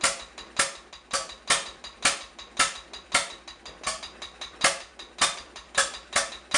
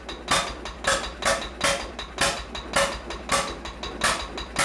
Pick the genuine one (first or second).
second